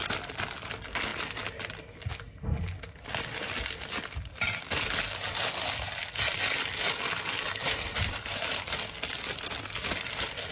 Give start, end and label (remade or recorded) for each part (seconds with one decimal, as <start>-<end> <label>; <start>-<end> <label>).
0.0-7.6 recorded; 7.6-8.6 remade; 8.6-10.5 recorded